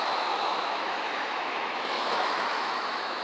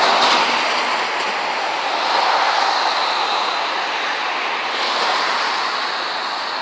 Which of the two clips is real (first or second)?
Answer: second